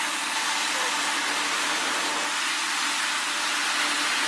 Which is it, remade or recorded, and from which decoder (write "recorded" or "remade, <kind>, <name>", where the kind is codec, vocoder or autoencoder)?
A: recorded